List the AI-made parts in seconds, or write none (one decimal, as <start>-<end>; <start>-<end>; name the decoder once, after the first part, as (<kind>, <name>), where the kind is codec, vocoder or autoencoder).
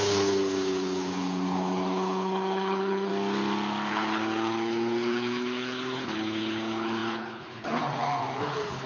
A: 0.0-3.1 (codec, HILCodec); 3.9-8.9